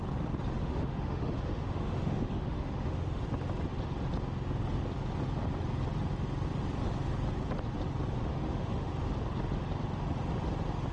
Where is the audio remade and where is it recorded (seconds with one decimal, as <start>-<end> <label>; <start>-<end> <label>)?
0.0-0.6 recorded; 0.6-3.2 remade; 3.2-8.3 recorded; 8.3-8.9 remade; 8.9-10.9 recorded